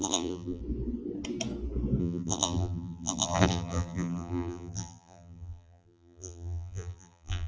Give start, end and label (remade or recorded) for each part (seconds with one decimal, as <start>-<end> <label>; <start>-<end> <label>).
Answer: 0.0-0.6 remade; 0.6-2.0 recorded; 2.0-7.5 remade